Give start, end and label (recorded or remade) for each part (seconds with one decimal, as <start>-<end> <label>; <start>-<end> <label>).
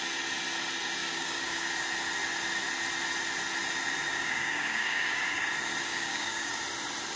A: 0.0-1.0 recorded; 1.0-1.7 remade; 1.7-4.1 recorded; 4.1-5.5 remade; 5.5-5.9 recorded; 5.9-6.6 remade; 6.6-7.2 recorded